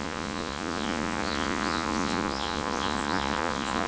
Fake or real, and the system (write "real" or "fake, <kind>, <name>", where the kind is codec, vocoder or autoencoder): fake, vocoder, Vocos